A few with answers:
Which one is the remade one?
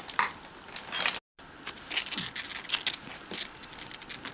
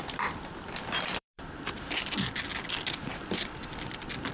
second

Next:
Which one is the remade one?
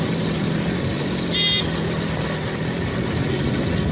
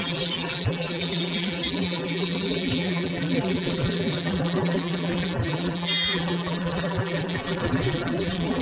second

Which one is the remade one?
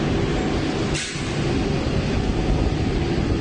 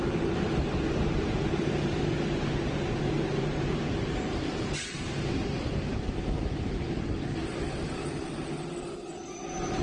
second